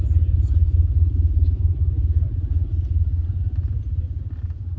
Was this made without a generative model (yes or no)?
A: yes